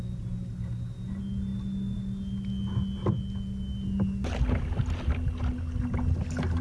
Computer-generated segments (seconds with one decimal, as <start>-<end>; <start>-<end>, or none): none